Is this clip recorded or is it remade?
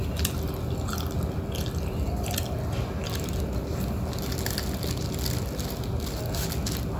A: recorded